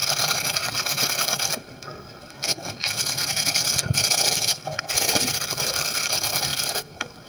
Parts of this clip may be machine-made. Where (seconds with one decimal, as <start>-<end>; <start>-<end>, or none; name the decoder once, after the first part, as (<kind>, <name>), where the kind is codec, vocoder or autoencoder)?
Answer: 0.0-7.3 (codec, SNAC)